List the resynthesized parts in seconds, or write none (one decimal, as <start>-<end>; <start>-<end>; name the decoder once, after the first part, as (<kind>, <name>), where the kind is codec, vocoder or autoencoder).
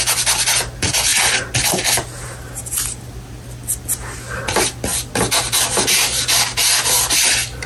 none